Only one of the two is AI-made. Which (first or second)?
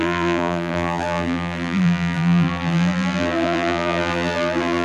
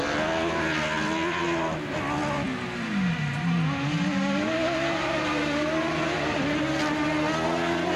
first